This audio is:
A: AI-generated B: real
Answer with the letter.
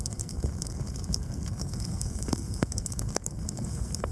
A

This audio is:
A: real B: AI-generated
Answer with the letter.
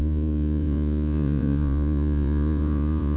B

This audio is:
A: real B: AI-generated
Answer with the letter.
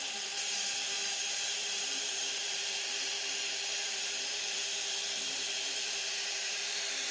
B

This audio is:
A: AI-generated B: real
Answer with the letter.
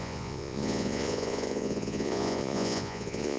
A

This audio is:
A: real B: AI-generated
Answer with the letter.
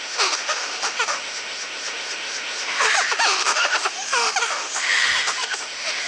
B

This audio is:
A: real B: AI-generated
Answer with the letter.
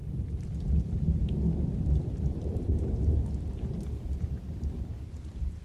B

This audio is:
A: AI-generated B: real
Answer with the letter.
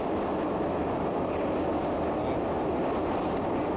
B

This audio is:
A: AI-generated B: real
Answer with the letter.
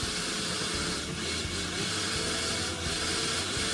B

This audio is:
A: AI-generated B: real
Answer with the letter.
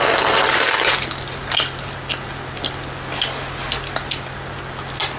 B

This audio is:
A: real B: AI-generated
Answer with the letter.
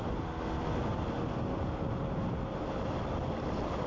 A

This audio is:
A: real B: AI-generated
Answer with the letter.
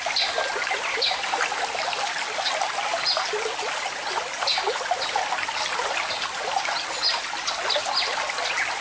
A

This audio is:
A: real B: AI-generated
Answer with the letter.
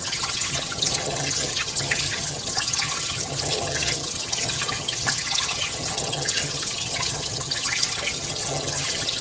B